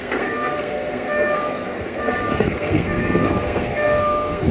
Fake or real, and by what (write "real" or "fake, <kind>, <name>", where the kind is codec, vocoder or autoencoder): fake, codec, SNAC